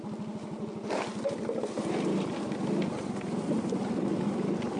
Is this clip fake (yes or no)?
no